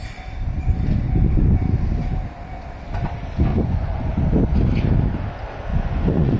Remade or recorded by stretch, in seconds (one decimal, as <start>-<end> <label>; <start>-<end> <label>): 0.0-3.5 recorded; 3.5-4.1 remade; 4.1-5.7 recorded; 5.7-6.4 remade